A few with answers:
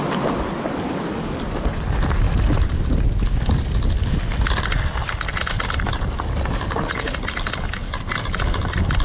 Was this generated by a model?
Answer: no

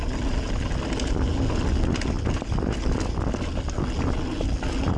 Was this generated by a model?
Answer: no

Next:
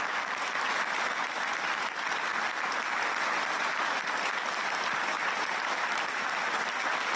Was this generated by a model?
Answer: no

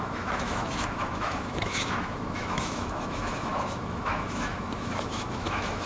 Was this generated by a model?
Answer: yes